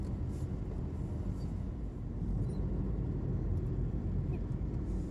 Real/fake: real